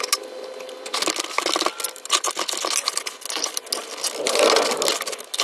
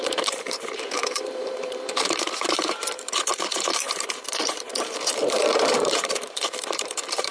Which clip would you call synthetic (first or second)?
second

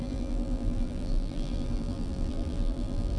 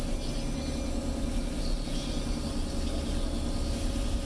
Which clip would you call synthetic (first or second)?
first